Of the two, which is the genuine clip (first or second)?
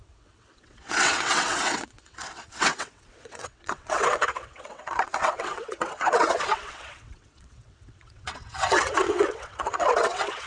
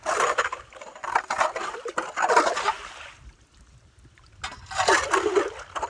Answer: second